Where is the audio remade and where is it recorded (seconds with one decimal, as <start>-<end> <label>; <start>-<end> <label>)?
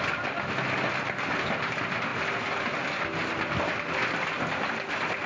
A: 0.0-5.3 recorded